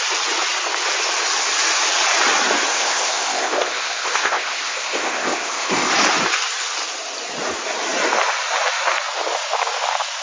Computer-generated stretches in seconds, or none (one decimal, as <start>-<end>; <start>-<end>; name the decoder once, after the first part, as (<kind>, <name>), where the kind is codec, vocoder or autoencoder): 2.7-5.9 (codec, ZipCodec)